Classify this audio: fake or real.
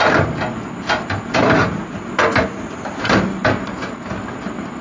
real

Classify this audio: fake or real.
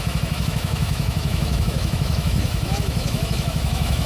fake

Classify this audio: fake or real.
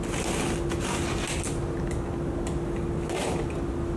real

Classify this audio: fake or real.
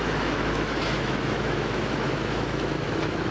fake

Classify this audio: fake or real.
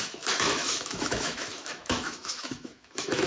fake